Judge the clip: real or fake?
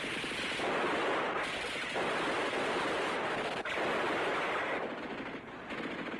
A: real